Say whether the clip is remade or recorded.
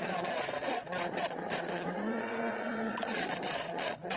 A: remade